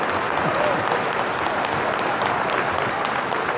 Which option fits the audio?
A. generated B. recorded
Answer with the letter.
B